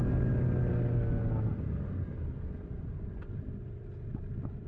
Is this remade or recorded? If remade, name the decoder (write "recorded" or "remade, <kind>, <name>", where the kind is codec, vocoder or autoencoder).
recorded